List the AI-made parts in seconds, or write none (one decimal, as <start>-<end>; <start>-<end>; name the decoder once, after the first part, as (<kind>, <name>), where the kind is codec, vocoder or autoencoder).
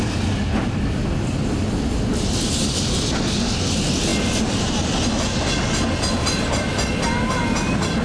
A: none